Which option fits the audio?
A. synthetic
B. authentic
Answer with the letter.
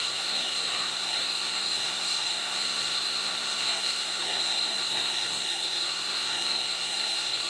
A